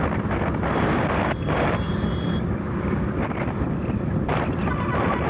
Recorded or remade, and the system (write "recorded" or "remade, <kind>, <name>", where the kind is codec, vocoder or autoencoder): recorded